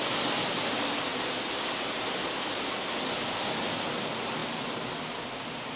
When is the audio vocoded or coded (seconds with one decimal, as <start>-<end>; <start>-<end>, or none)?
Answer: none